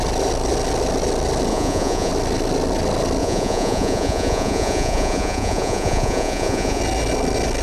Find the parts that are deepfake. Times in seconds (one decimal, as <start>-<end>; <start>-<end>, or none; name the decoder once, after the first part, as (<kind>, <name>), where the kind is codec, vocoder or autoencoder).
1.5-2.1 (vocoder, Vocos); 3.2-6.8